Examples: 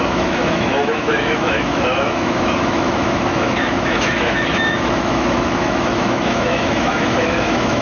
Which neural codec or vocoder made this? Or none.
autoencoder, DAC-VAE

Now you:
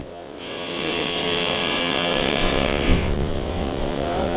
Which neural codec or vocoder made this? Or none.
vocoder, WaveNeXt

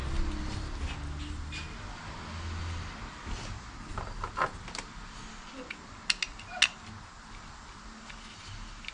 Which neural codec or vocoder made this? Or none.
none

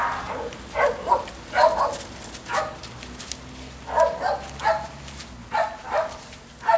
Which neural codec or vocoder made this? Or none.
none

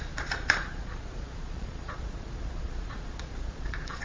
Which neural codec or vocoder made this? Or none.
vocoder, Vocos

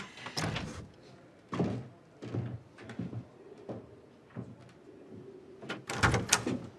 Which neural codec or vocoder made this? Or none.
none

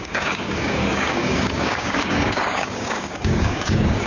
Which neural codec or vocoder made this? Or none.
codec, DAC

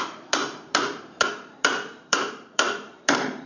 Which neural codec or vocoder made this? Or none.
vocoder, BigVGAN v2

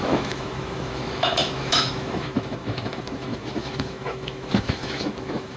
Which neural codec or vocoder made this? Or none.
autoencoder, DAC-VAE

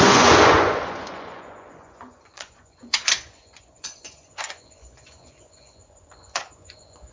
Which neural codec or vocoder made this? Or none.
vocoder, Vocos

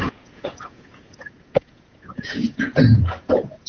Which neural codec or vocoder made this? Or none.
vocoder, Vocos